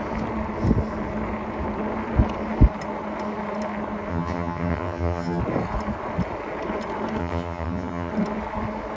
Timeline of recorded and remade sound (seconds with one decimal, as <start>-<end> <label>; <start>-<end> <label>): 0.0-4.1 recorded; 4.1-5.4 remade; 5.4-7.2 recorded; 7.2-8.1 remade; 8.1-9.0 recorded